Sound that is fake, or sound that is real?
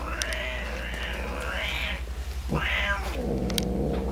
real